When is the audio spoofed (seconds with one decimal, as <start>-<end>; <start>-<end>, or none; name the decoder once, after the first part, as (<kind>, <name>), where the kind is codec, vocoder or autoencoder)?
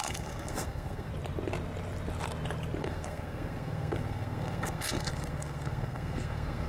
0.0-1.1 (codec, SNAC); 2.8-6.7